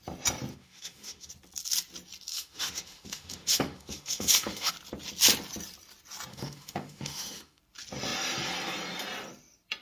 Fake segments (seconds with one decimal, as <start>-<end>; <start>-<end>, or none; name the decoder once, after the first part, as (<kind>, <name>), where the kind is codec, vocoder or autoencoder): 0.5-1.3 (autoencoder, DAC-VAE); 2.3-4.7; 6.3-7.6